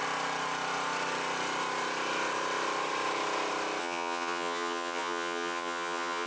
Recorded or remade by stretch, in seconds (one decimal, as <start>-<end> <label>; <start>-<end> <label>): 0.0-3.8 recorded; 3.8-6.3 remade